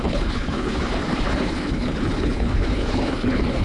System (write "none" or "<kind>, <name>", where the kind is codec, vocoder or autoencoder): codec, HILCodec